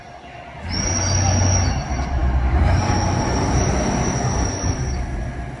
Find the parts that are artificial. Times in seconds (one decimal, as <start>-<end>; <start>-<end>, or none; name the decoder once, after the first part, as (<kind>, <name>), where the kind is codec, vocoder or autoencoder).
none